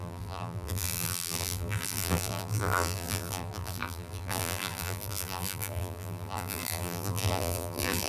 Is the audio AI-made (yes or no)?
yes